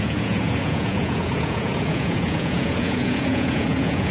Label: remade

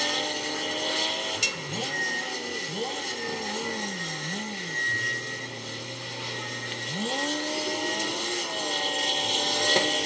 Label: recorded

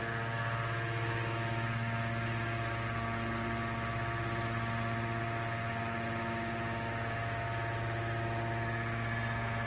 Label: recorded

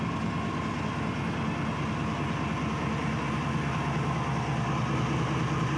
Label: recorded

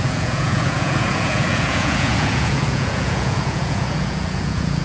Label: remade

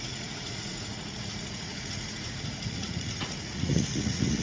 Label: remade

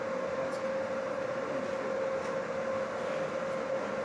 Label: recorded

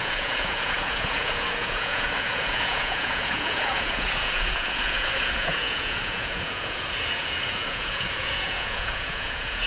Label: remade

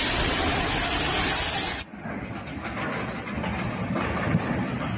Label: recorded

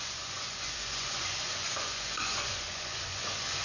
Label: remade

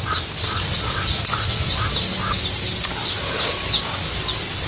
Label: recorded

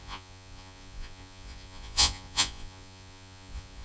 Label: remade